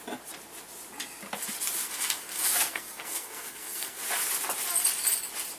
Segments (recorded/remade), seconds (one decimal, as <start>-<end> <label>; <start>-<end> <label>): 0.0-1.8 recorded; 1.8-4.0 remade; 4.0-5.6 recorded